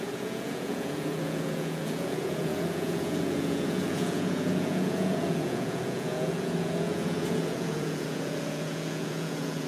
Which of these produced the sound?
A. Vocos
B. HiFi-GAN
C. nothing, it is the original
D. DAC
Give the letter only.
A